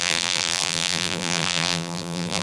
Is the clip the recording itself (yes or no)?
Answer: no